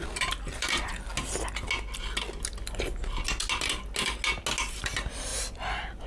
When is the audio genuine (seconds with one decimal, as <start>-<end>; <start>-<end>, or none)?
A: 1.1-4.8